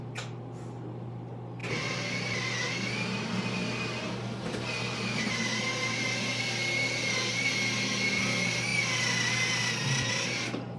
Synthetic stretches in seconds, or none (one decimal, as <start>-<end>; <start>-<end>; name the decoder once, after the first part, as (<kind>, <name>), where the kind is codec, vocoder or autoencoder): none